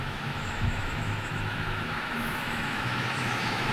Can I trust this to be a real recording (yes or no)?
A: no